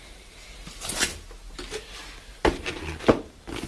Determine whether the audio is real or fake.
real